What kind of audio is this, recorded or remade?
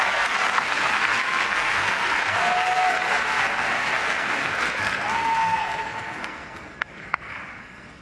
remade